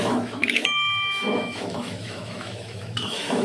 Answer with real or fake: fake